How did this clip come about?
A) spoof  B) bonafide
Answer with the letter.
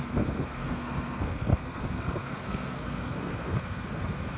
A